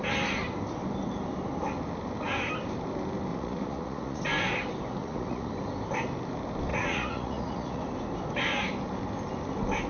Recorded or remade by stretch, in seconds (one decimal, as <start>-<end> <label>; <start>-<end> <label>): 0.0-3.3 recorded; 3.3-4.2 remade; 4.2-5.0 recorded; 5.0-5.5 remade; 5.5-6.7 recorded; 6.7-7.8 remade; 7.8-9.9 recorded